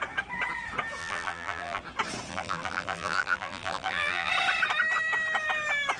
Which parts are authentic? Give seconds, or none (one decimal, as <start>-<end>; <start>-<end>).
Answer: 0.0-1.0; 1.8-2.3; 4.3-6.0